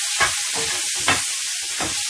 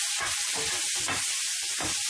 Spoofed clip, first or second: second